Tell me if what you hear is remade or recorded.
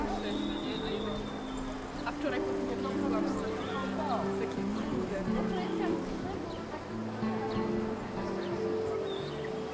recorded